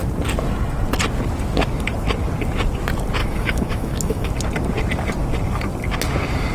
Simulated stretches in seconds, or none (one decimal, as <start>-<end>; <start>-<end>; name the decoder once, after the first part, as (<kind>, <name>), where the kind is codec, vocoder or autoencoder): 3.2-4.3 (autoencoder, DAC-VAE)